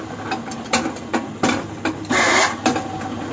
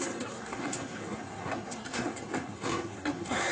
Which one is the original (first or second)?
first